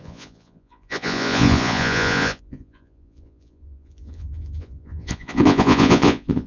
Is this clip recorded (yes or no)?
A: no